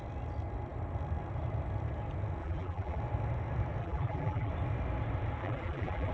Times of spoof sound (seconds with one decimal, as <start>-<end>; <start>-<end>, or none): 2.4-3.0; 3.8-4.5; 5.4-6.1